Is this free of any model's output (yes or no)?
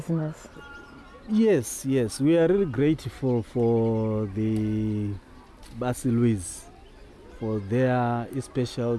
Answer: yes